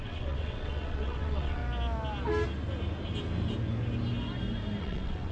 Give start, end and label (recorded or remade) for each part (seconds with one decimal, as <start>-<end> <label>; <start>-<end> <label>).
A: 0.0-1.6 remade; 1.6-4.8 recorded; 4.8-5.3 remade